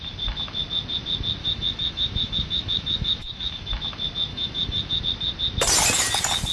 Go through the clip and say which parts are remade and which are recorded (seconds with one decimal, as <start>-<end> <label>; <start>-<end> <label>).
0.0-1.4 recorded; 1.4-3.7 remade; 3.7-4.3 recorded; 4.3-5.0 remade; 5.0-6.5 recorded